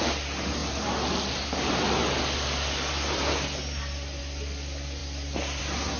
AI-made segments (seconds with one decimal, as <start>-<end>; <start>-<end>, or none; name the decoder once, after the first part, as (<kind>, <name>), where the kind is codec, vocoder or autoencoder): none